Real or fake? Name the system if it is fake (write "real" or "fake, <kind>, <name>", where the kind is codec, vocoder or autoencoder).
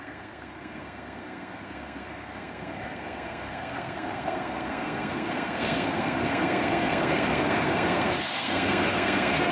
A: fake, codec, SNAC